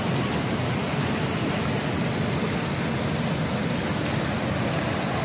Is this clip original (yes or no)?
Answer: yes